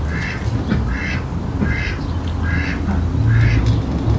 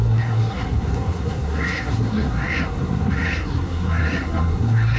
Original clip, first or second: first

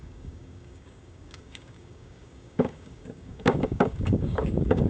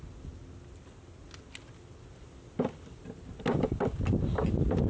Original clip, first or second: second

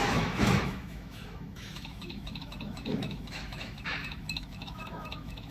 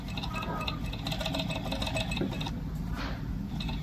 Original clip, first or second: second